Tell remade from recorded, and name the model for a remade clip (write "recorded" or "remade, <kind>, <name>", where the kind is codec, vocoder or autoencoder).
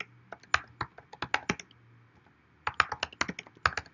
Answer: recorded